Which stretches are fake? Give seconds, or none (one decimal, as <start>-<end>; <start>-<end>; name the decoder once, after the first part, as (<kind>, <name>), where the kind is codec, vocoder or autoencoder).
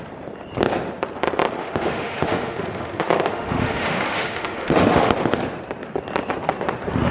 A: 1.6-5.1 (autoencoder, DAC-VAE)